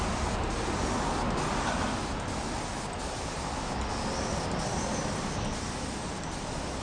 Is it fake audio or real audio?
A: real